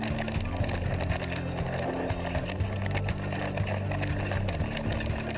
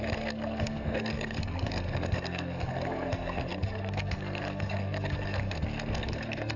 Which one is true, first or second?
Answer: first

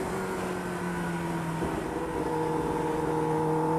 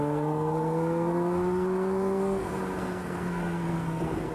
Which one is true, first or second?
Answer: first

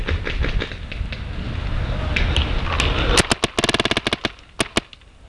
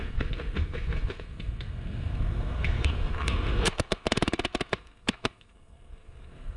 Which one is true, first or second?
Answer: first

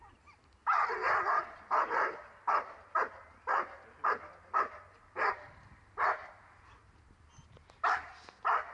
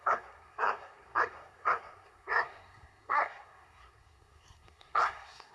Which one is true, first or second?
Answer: first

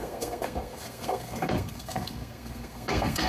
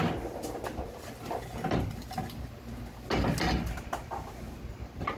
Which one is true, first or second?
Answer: second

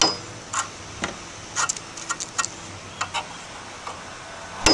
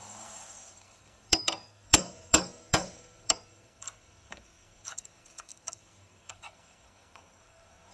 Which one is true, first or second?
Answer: first